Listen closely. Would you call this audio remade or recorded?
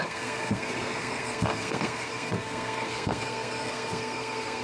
remade